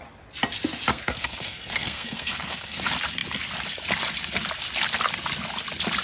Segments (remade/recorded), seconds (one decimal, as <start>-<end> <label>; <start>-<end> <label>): 0.0-0.9 recorded; 0.9-2.8 remade; 2.8-6.0 recorded